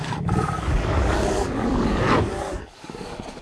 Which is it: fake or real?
fake